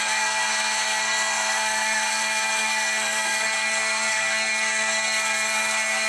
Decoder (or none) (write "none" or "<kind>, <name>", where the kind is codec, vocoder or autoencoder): codec, SNAC